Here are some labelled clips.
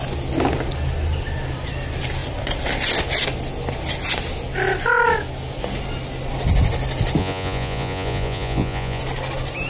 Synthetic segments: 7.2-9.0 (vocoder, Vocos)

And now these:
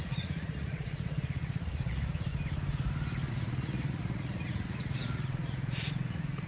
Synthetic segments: 0.0-2.3 (vocoder, Vocos); 3.3-6.5

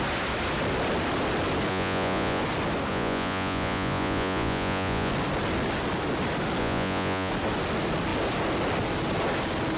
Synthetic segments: 1.7-2.4 (vocoder, Vocos); 2.9-5.1; 6.6-7.3

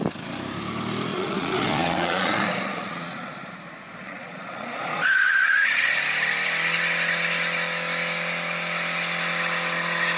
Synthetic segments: 1.1-3.5 (vocoder, Vocos); 4.0-5.9

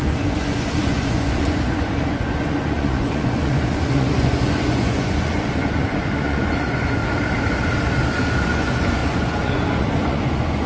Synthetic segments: 0.0-7.0 (vocoder, Vocos); 8.0-10.7

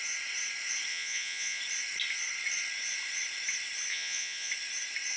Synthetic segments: 0.9-1.6 (vocoder, Vocos); 3.9-4.5

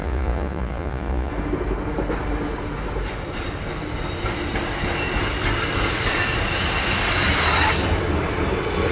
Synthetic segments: 0.0-1.3 (vocoder, Vocos)